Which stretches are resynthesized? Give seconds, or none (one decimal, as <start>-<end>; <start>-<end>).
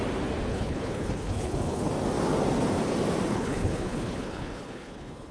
0.5-1.9; 3.3-5.3